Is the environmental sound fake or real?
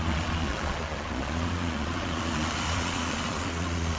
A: fake